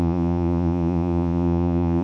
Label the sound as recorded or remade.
remade